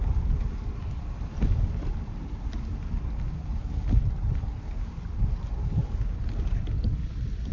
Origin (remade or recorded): recorded